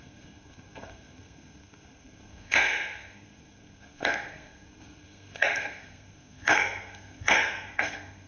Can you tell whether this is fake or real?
fake